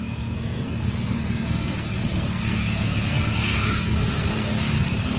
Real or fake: fake